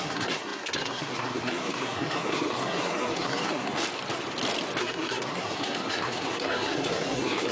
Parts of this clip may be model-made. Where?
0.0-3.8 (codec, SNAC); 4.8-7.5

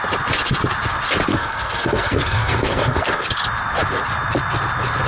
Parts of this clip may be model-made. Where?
1.3-3.2 (codec, SNAC)

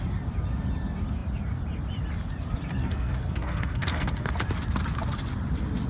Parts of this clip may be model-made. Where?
2.8-4.3 (codec, SNAC)

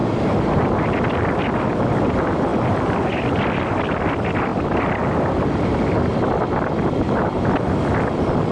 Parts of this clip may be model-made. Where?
none

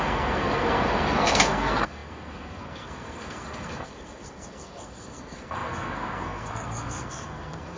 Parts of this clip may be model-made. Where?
0.0-7.8 (codec, SNAC)

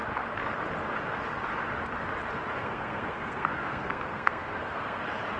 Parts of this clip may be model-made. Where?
2.6-5.0 (codec, SNAC)

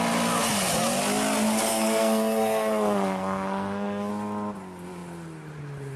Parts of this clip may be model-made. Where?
1.7-4.1 (codec, SNAC)

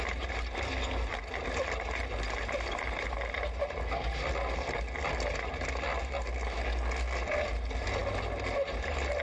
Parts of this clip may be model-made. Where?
none